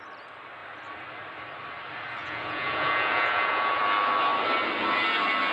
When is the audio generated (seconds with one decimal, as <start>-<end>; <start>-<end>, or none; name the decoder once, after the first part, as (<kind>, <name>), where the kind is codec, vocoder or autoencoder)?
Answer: 2.2-3.8 (vocoder, Vocos)